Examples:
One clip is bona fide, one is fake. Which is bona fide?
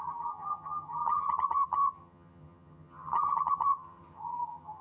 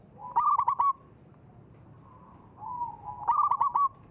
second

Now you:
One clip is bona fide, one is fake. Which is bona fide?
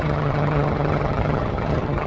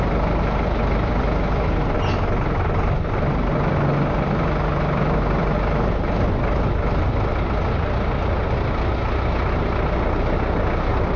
second